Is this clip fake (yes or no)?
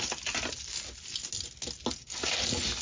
no